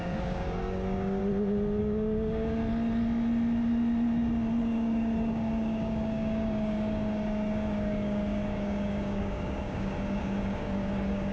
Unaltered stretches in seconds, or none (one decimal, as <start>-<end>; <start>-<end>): 1.2-1.8; 2.6-4.6